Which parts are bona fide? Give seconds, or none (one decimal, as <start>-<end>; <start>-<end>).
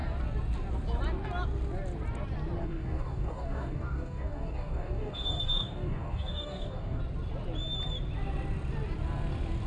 0.0-2.6; 7.0-9.7